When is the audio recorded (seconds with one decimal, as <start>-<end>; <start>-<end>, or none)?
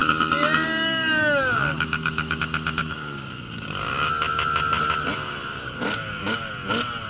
2.4-2.8; 4.1-5.5; 6.5-7.1